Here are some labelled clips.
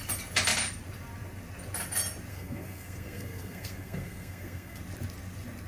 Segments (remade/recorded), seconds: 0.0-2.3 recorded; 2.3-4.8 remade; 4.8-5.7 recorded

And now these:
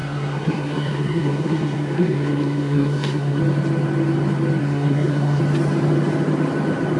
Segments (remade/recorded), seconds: 0.0-3.4 remade; 3.4-4.6 recorded; 4.6-5.4 remade; 5.4-7.0 recorded

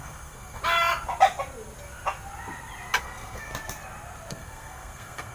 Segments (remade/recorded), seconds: 0.0-0.6 remade; 0.6-3.0 recorded; 3.0-3.5 remade; 3.5-4.3 recorded; 4.3-5.3 remade

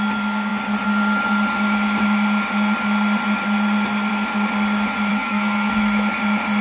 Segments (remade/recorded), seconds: 0.0-5.1 recorded; 5.1-5.8 remade; 5.8-6.6 recorded

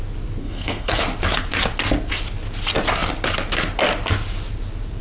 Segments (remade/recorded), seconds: 0.0-0.4 recorded; 0.4-1.0 remade; 1.0-5.0 recorded